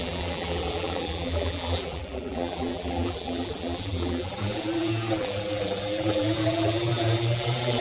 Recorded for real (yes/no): no